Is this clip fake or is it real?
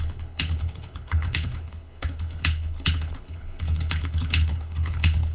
fake